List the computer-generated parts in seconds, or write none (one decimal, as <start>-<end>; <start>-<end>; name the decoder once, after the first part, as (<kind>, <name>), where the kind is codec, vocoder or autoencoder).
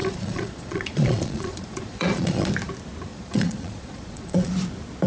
0.0-2.5 (vocoder, Vocos); 3.1-4.5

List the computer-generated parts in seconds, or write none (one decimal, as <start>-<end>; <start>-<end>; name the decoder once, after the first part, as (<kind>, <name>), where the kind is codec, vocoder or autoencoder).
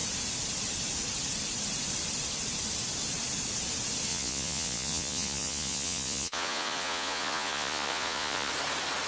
4.1-8.5 (vocoder, Vocos)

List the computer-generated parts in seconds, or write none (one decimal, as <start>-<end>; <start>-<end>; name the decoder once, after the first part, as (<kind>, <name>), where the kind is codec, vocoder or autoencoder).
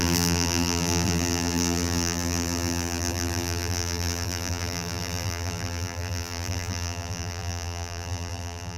0.0-8.8 (vocoder, BigVGAN v2)